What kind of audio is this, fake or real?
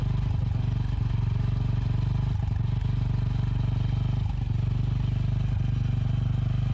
real